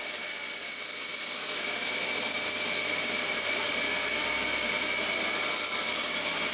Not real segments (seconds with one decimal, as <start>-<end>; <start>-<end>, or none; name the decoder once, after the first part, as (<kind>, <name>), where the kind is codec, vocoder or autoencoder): none